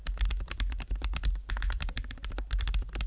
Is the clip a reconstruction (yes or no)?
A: no